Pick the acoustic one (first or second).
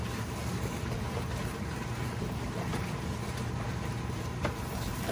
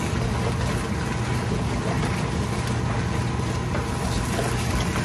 second